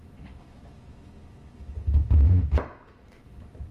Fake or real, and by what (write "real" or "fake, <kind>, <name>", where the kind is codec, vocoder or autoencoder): fake, autoencoder, DAC-VAE